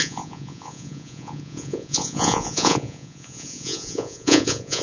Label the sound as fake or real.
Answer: fake